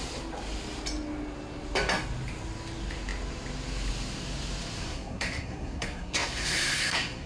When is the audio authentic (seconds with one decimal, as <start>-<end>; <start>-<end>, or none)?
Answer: 0.0-4.8